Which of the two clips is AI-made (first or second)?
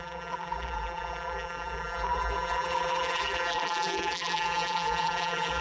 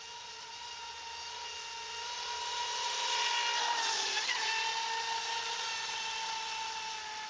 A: first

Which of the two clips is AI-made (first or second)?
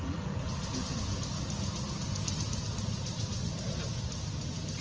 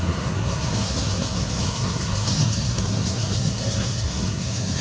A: second